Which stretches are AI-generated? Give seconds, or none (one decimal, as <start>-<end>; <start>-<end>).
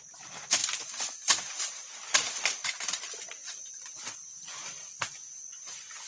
none